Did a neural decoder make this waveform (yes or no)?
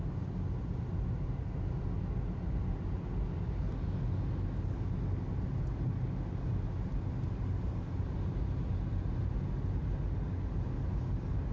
no